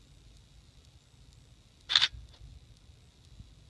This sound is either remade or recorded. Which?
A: recorded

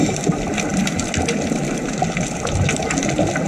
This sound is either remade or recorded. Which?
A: recorded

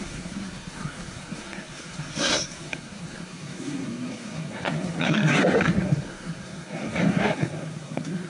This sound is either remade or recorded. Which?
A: remade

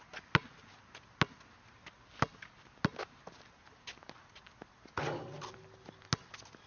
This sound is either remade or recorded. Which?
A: recorded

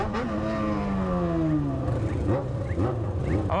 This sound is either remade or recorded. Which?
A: recorded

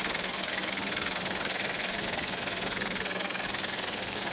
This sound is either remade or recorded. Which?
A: remade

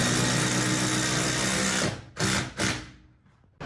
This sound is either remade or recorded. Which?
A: recorded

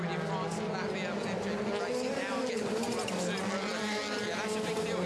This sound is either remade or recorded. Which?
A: recorded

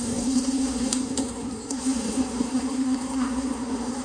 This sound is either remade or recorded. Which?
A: remade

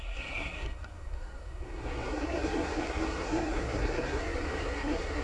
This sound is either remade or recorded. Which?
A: remade